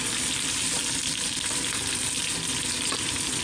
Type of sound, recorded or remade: recorded